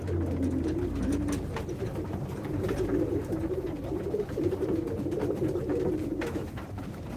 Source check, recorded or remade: remade